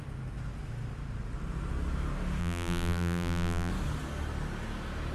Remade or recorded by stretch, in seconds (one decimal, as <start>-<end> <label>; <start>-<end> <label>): 0.0-2.4 recorded; 2.4-3.7 remade; 3.7-5.1 recorded